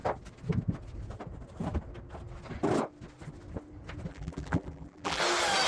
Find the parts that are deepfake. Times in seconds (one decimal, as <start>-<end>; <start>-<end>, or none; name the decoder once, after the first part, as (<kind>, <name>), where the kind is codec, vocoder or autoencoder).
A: 4.1-5.2 (vocoder, BigVGAN v2)